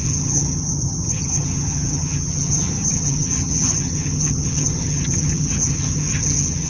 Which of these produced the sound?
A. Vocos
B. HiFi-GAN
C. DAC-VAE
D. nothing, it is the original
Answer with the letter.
B